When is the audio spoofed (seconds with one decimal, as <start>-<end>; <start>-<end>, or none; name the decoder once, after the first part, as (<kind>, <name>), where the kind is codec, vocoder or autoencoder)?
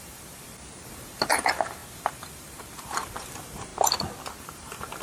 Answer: 0.0-3.7 (vocoder, BigVGAN v2); 4.4-5.0